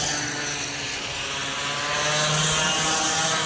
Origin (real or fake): real